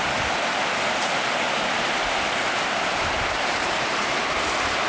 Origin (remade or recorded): recorded